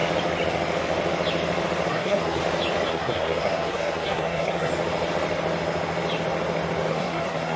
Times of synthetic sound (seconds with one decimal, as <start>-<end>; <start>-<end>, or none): 1.9-2.4; 2.9-4.7; 6.9-7.6